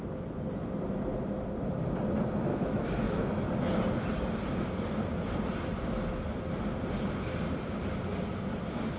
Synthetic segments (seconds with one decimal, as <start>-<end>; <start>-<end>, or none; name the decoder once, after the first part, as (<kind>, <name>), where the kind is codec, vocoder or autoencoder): 2.5-3.4 (autoencoder, DAC-VAE)